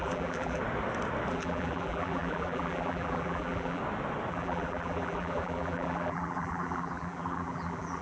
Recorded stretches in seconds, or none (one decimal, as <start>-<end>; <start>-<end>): 0.6-1.3; 3.8-4.3